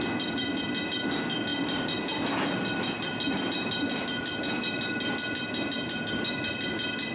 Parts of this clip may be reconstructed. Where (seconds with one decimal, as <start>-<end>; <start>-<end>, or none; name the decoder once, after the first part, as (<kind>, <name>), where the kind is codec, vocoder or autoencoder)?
none